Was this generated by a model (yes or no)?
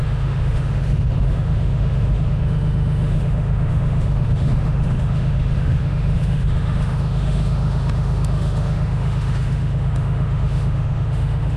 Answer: yes